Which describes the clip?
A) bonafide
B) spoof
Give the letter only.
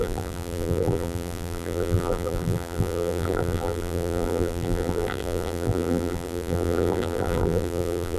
B